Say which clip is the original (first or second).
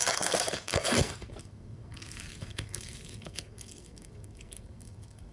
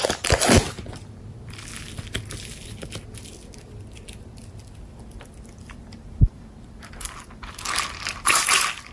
second